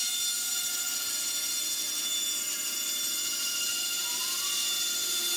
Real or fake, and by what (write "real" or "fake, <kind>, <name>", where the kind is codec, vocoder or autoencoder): real